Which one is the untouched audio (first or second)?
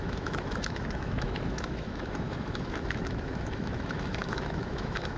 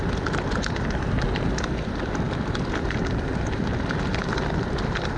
second